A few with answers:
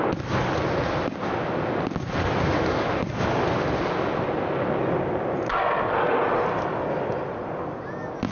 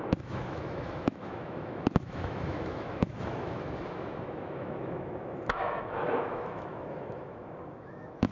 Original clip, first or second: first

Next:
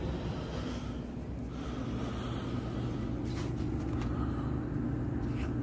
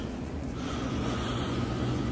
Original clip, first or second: first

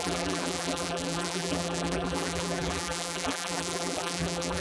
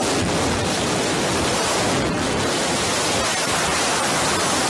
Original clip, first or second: second